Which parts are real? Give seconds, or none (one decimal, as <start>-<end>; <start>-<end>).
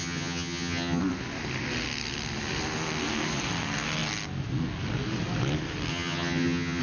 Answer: 1.0-5.9